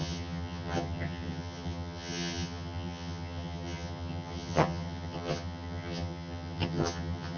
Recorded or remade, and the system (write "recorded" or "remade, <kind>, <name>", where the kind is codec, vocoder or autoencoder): remade, vocoder, HiFi-GAN